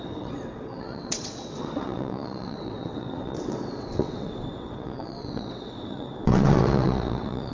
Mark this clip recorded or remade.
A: remade